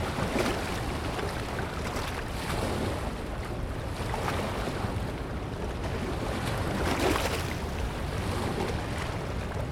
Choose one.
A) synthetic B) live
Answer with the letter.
B